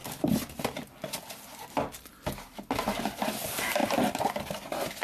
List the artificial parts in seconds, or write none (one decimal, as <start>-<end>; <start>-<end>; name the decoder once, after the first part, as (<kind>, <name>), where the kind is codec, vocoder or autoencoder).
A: none